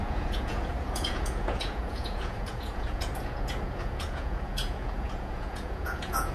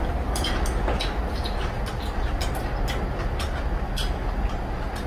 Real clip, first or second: second